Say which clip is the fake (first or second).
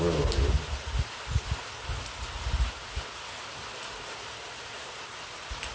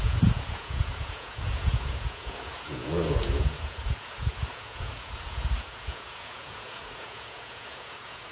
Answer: second